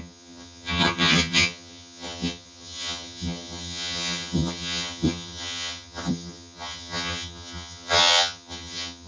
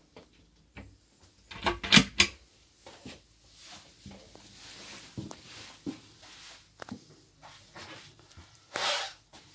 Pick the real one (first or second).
second